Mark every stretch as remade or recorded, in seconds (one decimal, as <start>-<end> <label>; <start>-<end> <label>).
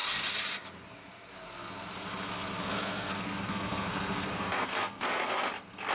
0.0-2.6 recorded; 2.6-5.4 remade; 5.4-5.9 recorded